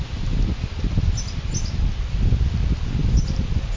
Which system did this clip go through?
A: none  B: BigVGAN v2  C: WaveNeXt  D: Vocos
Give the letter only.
A